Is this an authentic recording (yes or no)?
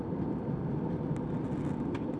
no